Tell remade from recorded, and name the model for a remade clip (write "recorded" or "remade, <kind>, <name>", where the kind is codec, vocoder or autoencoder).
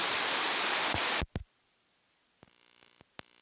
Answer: recorded